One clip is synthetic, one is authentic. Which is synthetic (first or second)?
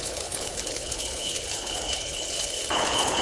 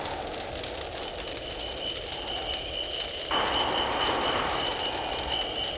first